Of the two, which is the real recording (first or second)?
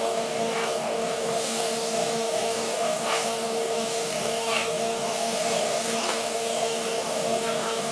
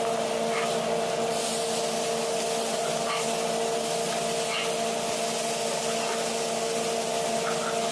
second